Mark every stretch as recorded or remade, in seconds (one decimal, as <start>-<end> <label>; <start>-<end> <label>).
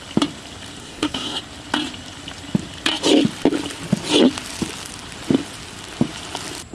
0.0-0.8 recorded; 0.8-1.4 remade; 1.4-6.7 recorded